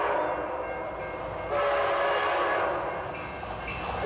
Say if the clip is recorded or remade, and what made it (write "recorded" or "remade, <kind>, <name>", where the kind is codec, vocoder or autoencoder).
recorded